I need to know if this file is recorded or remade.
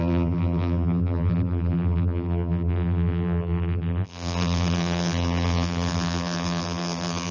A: remade